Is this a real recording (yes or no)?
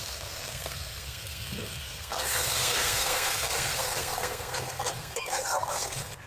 no